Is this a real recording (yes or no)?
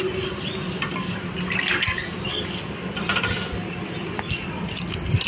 yes